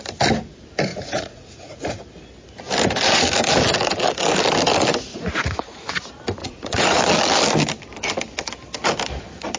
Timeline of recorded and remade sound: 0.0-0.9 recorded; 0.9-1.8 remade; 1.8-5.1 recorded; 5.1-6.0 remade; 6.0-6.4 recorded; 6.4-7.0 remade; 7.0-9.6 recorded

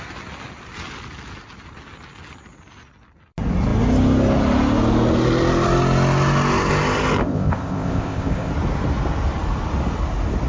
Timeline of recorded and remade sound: 0.0-7.2 recorded; 7.2-8.5 remade; 8.5-10.5 recorded

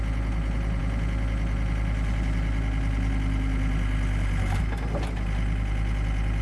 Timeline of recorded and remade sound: 0.0-6.4 recorded